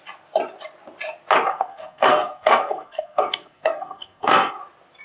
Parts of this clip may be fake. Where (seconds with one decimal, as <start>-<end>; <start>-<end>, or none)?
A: 1.5-4.5